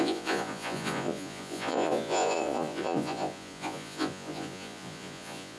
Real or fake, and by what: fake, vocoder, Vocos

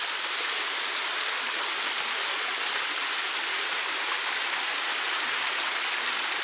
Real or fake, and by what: real